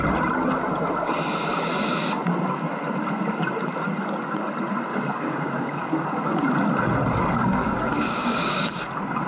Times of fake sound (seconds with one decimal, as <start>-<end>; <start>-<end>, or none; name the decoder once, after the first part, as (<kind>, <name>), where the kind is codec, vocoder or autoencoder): 4.9-6.5 (codec, DAC); 7.4-8.8